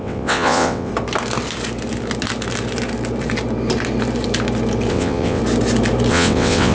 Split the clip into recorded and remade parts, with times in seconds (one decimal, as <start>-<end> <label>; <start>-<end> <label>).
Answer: 0.0-0.9 remade; 0.9-4.9 recorded; 4.9-5.4 remade; 5.4-6.1 recorded; 6.1-6.7 remade